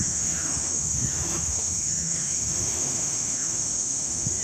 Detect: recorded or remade remade